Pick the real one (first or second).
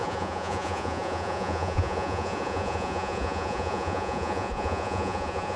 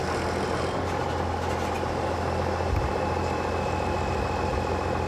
second